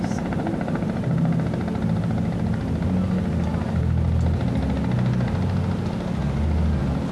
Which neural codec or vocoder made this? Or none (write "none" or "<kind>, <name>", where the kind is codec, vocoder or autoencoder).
none